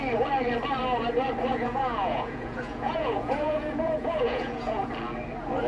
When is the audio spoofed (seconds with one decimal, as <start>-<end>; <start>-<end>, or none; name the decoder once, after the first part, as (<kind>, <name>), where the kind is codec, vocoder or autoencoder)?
1.5-4.9 (vocoder, Vocos)